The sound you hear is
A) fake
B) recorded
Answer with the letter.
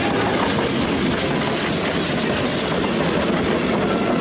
B